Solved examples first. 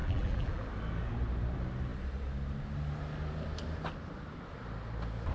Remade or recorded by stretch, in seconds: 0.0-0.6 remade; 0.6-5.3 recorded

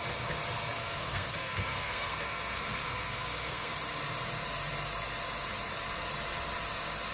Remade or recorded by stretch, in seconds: 0.0-0.8 recorded; 0.8-3.7 remade; 3.7-7.1 recorded

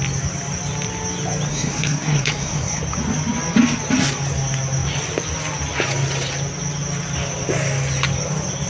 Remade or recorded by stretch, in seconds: 0.0-1.5 recorded; 1.5-2.8 remade; 2.8-8.7 recorded

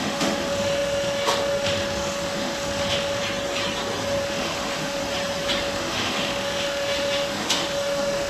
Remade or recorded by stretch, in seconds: 0.0-3.2 remade; 3.2-4.2 recorded; 4.2-5.0 remade; 5.0-5.6 recorded; 5.6-8.3 remade

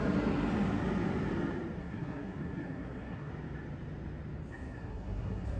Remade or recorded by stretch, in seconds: 0.0-1.8 recorded; 1.8-3.3 remade; 3.3-4.5 recorded; 4.5-5.6 remade

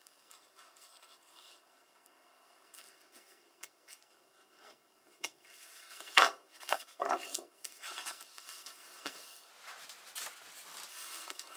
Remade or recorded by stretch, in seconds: 0.0-9.5 remade; 9.5-10.9 recorded; 10.9-11.6 remade

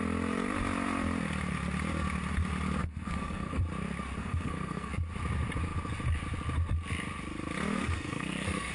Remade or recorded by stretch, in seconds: 0.0-2.8 recorded; 2.8-3.6 remade; 3.6-4.2 recorded; 4.2-4.9 remade; 4.9-7.8 recorded; 7.8-8.7 remade

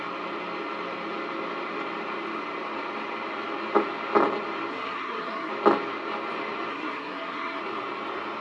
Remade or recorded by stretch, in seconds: 0.0-4.7 recorded; 4.7-5.5 remade; 5.5-6.7 recorded; 6.7-7.6 remade; 7.6-8.4 recorded